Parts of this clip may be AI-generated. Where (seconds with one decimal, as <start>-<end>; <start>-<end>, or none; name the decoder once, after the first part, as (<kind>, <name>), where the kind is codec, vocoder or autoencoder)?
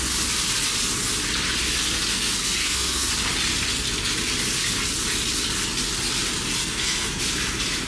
2.1-3.1 (codec, SNAC); 6.6-7.2